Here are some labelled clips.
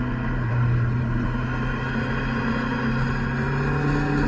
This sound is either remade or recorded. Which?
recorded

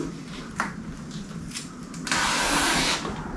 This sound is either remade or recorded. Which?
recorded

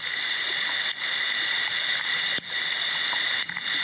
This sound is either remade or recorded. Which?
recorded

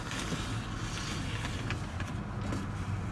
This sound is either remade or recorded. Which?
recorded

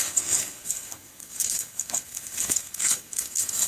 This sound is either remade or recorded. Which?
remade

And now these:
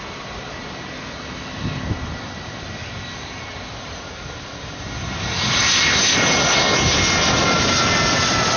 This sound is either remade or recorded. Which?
recorded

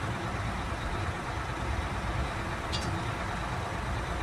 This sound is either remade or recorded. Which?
recorded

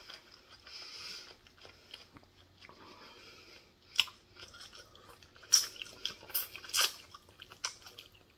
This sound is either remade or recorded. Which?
recorded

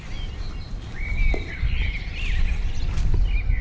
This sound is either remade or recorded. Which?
recorded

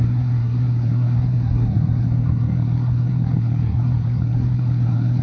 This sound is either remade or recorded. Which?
remade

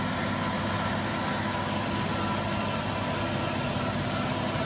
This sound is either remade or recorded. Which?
recorded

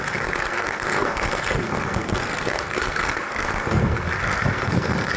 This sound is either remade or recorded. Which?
remade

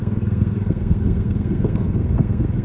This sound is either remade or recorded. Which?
remade